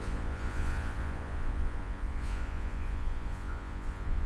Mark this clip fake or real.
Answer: fake